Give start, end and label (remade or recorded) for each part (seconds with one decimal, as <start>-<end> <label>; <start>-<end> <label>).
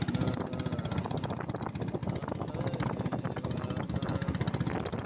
0.0-5.1 recorded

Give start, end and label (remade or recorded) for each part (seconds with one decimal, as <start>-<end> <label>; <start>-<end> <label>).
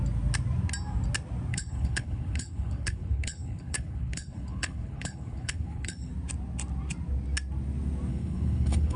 0.0-1.5 recorded; 1.5-6.1 remade; 6.1-8.1 recorded; 8.1-9.0 remade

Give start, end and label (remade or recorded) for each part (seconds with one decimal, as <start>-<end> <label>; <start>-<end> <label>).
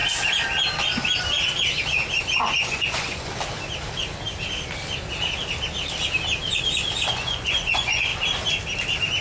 0.0-2.2 recorded; 2.2-3.3 remade; 3.3-7.1 recorded; 7.1-8.1 remade; 8.1-9.2 recorded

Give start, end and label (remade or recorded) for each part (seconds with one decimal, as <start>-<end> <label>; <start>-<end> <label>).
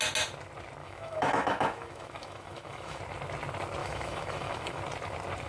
0.0-0.8 recorded; 0.8-3.0 remade; 3.0-3.8 recorded; 3.8-4.8 remade; 4.8-5.5 recorded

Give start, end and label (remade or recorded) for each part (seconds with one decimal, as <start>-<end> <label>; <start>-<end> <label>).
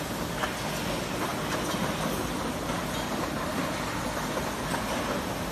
0.0-5.5 recorded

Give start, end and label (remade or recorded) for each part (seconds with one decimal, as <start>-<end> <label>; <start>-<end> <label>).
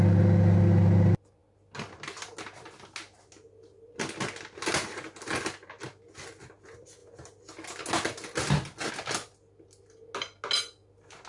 0.0-11.3 recorded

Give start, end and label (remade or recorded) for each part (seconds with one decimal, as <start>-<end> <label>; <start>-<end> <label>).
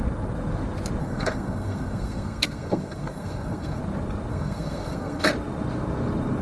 0.0-1.0 recorded; 1.0-3.8 remade; 3.8-4.3 recorded; 4.3-5.3 remade; 5.3-6.4 recorded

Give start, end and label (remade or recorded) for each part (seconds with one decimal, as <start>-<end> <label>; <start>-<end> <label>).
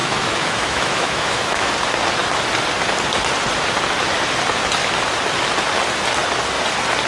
0.0-1.7 remade; 1.7-7.1 recorded